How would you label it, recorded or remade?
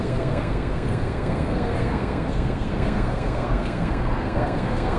remade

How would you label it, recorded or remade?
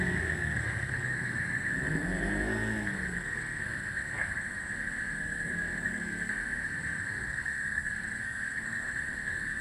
remade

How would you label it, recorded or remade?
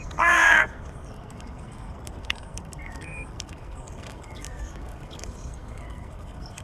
remade